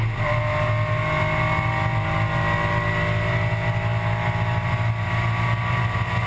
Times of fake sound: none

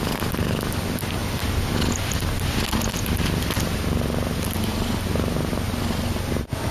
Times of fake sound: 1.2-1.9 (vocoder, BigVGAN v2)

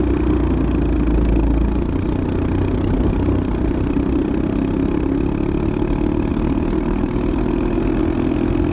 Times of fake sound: 6.3-8.0 (vocoder, BigVGAN v2)

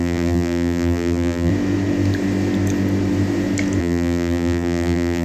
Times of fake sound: 0.0-1.5 (vocoder, BigVGAN v2); 3.8-5.2

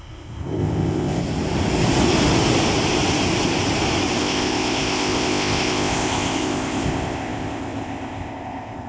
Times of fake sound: 0.0-1.2 (codec, ZipCodec); 4.2-8.9